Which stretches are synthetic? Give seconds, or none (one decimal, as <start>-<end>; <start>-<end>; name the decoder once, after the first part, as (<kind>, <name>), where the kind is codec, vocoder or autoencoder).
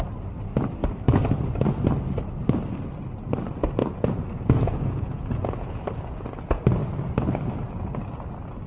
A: 3.8-6.3 (vocoder, Vocos)